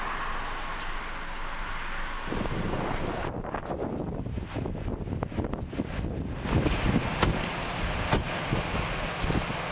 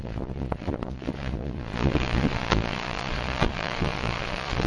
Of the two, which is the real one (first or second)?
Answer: first